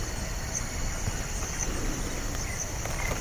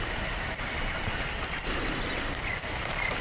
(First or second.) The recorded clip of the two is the first